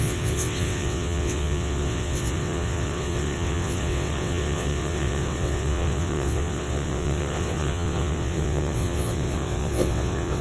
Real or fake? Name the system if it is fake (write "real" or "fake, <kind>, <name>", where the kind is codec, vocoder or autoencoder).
fake, vocoder, WaveNeXt